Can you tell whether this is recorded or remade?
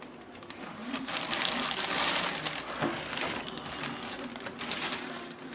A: recorded